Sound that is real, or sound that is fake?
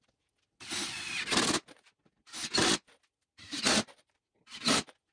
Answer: real